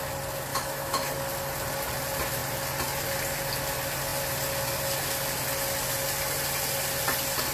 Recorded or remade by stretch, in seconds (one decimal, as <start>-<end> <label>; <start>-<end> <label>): 0.0-0.5 recorded; 0.5-1.1 remade; 1.1-7.5 recorded